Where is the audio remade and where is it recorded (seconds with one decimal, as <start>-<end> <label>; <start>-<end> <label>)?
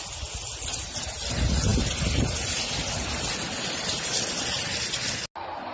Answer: 0.0-5.7 recorded